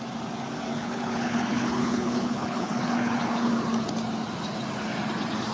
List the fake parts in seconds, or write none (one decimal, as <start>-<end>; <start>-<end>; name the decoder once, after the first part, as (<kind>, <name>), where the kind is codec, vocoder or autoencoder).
0.7-3.5 (codec, HILCodec)